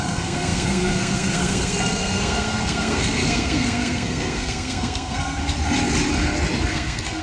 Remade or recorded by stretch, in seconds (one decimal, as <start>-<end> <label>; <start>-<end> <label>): 0.0-5.4 remade; 5.4-6.6 recorded; 6.6-7.2 remade